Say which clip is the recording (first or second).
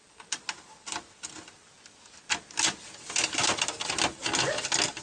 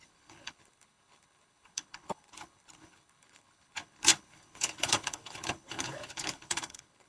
first